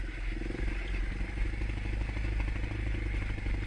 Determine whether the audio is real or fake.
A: real